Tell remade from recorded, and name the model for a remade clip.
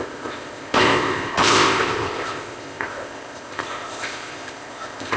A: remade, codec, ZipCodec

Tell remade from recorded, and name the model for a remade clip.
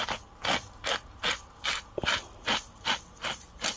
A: recorded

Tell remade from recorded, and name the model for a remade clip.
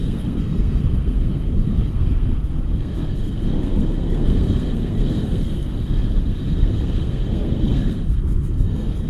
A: remade, codec, SNAC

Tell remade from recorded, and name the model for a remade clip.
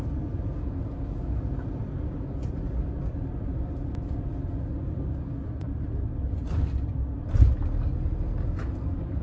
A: recorded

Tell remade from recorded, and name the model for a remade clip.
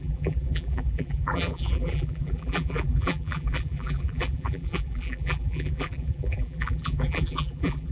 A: remade, vocoder, BigVGAN v2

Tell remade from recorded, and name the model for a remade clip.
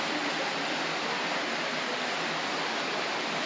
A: recorded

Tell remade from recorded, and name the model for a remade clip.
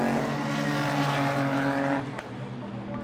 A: recorded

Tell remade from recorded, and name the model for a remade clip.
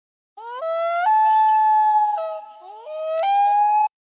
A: remade, autoencoder, DAC-VAE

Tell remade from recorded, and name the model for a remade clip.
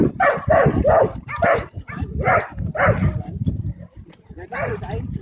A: recorded